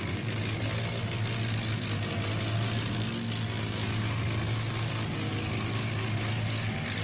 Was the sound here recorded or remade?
recorded